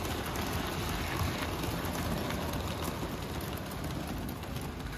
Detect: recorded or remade recorded